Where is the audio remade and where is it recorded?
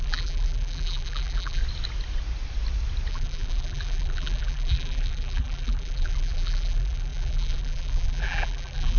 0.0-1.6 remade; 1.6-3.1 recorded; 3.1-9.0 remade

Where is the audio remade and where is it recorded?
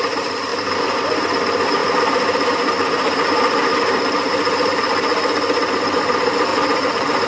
0.0-0.5 remade; 0.5-1.3 recorded; 1.3-1.8 remade; 1.8-3.8 recorded; 3.8-7.3 remade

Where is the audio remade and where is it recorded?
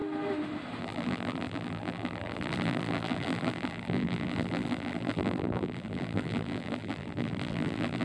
0.0-0.8 recorded; 0.8-8.0 remade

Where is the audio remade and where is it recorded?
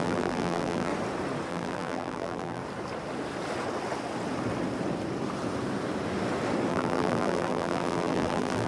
0.0-0.9 remade; 0.9-1.5 recorded; 1.5-2.6 remade; 2.6-6.7 recorded; 6.7-8.7 remade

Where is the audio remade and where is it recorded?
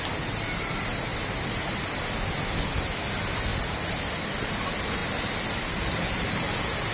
0.0-3.5 recorded; 3.5-4.5 remade; 4.5-5.0 recorded; 5.0-6.3 remade; 6.3-6.9 recorded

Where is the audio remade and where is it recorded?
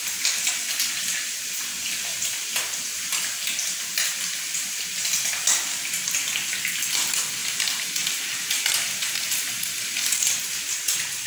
0.0-2.1 recorded; 2.1-3.1 remade; 3.1-3.6 recorded; 3.6-4.9 remade; 4.9-7.4 recorded; 7.4-9.6 remade; 9.6-11.3 recorded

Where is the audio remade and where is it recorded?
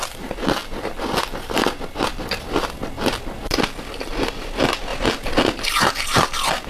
0.0-6.7 recorded